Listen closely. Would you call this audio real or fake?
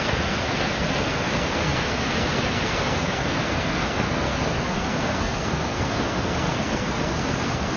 fake